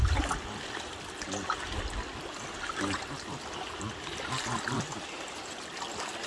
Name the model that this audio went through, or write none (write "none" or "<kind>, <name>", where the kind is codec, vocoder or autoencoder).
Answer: none